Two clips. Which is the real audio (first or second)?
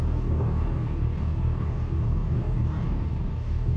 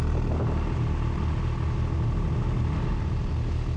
second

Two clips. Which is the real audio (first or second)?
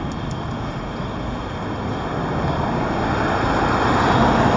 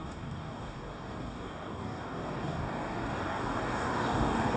first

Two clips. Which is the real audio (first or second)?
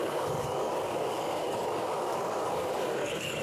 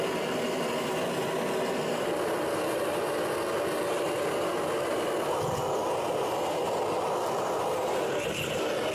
second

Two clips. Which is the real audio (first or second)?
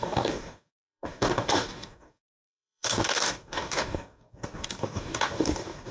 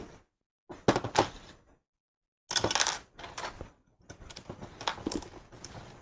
second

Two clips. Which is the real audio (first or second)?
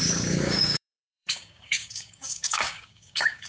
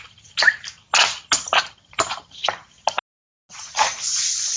second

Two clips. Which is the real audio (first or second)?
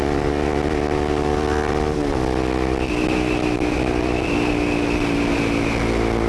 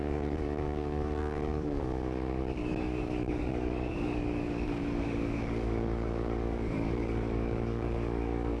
first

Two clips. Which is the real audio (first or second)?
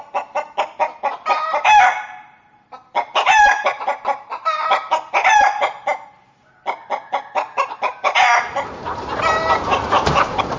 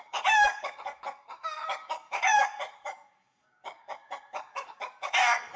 first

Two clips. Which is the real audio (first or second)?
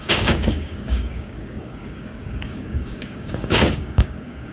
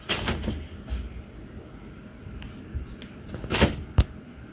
second